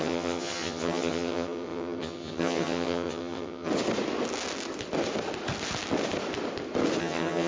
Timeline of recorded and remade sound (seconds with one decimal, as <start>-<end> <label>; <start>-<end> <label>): 0.0-3.7 remade; 3.7-7.0 recorded; 7.0-7.5 remade